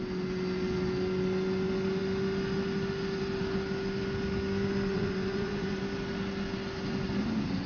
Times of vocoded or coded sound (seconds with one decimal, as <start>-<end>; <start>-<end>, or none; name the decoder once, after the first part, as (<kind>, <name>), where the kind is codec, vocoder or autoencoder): 4.9-5.8 (vocoder, Vocos)